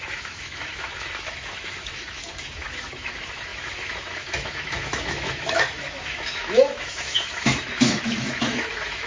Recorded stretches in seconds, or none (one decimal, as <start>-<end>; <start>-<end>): none